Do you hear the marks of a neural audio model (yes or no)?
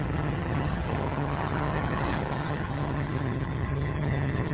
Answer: yes